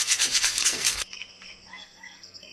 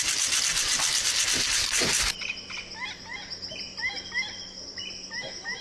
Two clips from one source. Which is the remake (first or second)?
first